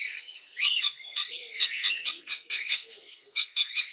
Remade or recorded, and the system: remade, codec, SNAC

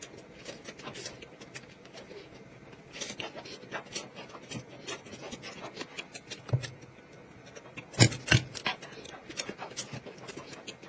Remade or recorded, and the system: recorded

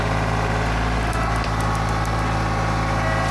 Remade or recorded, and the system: recorded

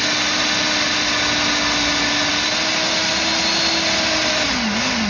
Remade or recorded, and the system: recorded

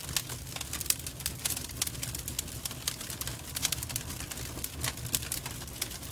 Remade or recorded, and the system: recorded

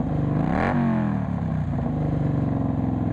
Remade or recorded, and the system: recorded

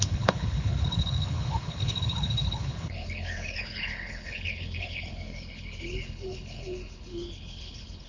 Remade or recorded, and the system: remade, codec, HILCodec